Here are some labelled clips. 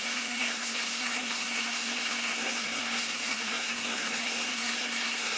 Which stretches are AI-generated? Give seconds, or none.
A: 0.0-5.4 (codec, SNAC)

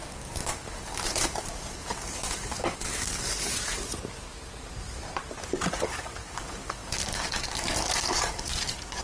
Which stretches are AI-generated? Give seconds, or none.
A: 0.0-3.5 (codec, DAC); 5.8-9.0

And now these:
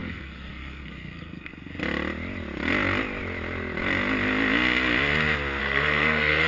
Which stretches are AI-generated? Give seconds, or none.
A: 0.0-1.7 (codec, SNAC); 5.6-6.5

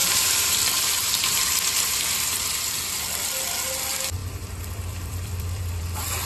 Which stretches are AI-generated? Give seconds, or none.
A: 0.0-2.8 (vocoder, BigVGAN v2); 4.2-5.8

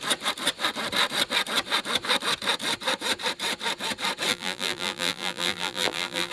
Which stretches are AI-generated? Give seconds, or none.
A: 4.3-6.3 (vocoder, BigVGAN v2)